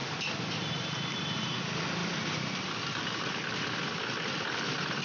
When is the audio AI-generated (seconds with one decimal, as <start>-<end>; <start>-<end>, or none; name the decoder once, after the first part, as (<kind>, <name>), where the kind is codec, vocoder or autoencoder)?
none